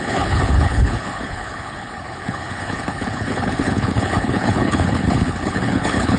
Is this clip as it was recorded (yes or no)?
no